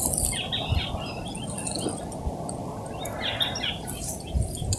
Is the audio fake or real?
real